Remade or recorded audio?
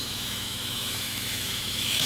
remade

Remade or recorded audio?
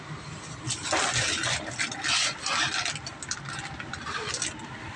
recorded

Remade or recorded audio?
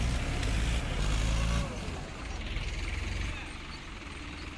recorded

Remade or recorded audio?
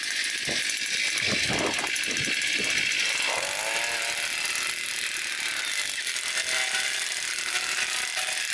recorded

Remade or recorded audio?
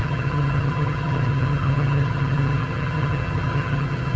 remade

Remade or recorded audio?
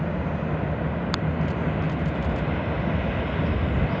recorded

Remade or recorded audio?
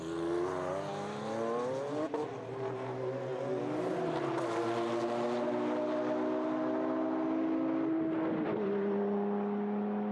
recorded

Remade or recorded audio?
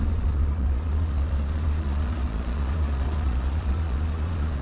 remade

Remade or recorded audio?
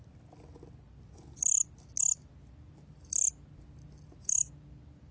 recorded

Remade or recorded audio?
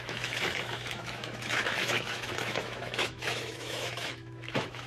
remade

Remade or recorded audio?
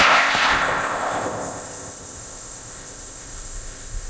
remade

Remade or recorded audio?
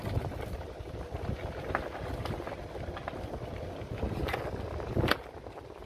recorded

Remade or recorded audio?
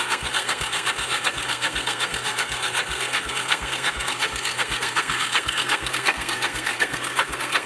remade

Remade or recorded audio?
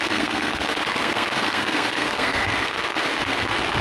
remade